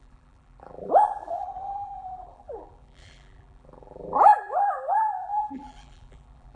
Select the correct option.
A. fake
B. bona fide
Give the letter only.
A